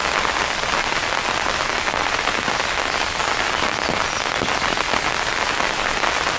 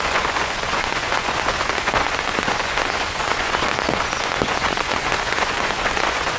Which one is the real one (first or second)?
first